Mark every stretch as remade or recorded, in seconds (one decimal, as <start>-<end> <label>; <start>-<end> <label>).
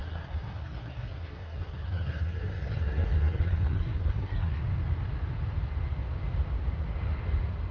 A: 0.0-4.6 remade; 4.6-7.7 recorded